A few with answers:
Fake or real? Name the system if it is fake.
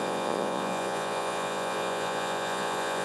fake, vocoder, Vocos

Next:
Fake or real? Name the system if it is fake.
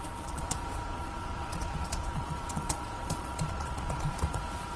fake, vocoder, Vocos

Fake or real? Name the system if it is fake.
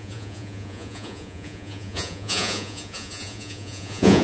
fake, vocoder, Vocos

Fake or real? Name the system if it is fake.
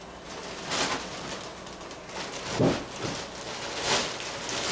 real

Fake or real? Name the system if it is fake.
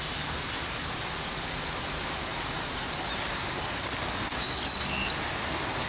real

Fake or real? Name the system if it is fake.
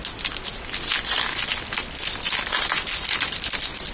real